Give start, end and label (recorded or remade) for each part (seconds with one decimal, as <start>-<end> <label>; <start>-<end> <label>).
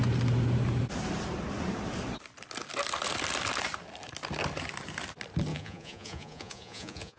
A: 0.0-5.5 recorded; 5.5-7.2 remade